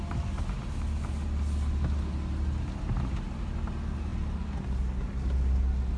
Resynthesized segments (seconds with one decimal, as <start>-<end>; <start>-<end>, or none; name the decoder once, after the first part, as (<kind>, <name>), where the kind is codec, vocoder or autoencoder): none